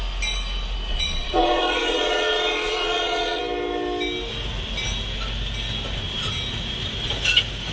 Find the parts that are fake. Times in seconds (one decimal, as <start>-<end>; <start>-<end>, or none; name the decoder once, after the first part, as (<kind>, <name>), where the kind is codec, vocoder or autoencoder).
0.9-3.4 (vocoder, Vocos)